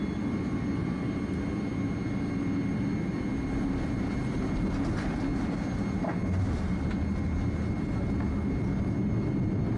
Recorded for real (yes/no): yes